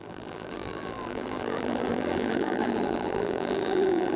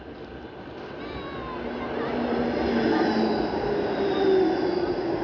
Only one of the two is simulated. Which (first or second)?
first